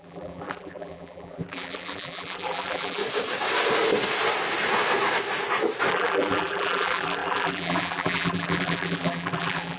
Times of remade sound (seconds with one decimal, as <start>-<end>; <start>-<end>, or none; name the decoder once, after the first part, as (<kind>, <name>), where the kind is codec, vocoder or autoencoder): 0.0-3.0 (vocoder, BigVGAN v2); 5.9-9.8